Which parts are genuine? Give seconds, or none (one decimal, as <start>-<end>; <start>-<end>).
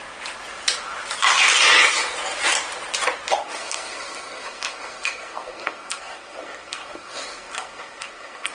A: 0.0-3.4